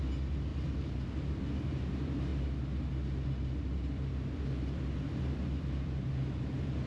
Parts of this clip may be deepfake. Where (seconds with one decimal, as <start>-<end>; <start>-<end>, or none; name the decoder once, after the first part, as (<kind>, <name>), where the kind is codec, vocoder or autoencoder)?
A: 0.5-1.4 (vocoder, BigVGAN v2)